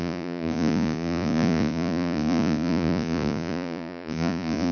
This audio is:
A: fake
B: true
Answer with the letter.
A